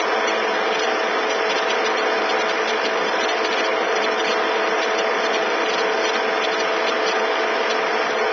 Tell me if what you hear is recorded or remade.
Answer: recorded